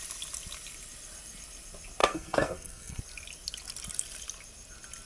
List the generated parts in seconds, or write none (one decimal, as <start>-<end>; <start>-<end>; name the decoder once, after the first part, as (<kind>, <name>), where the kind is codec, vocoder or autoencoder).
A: 2.0-3.0 (codec, SNAC)